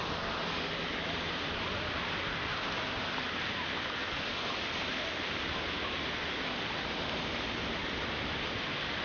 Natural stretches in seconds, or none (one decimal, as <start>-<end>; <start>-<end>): 0.0-9.0